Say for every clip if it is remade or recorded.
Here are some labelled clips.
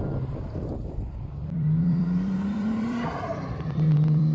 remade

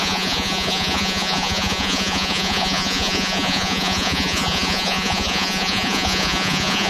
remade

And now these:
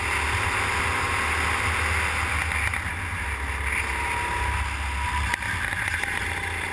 recorded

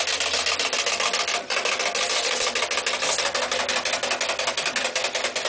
recorded